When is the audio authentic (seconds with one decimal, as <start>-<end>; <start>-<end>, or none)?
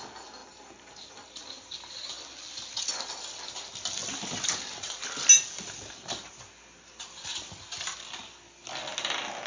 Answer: 0.0-9.5